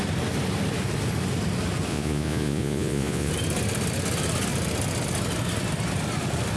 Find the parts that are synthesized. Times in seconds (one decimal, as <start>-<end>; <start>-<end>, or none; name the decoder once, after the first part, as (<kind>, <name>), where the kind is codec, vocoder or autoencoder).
1.9-3.3 (vocoder, Vocos)